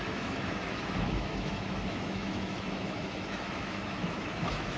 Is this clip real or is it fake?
fake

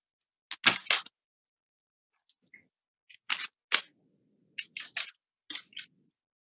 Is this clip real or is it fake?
real